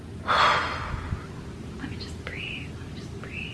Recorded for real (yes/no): yes